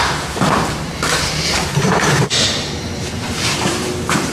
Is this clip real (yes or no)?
no